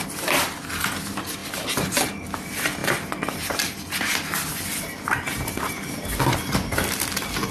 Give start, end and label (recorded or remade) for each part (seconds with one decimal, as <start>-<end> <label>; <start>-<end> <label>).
0.0-7.5 recorded